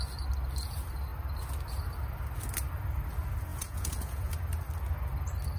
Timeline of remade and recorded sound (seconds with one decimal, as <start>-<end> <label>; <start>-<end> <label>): 0.0-3.5 recorded; 3.5-4.3 remade; 4.3-5.6 recorded